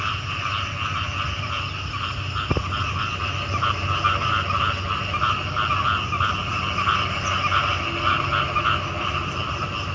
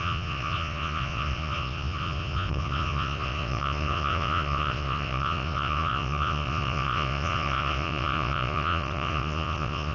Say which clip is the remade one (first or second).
second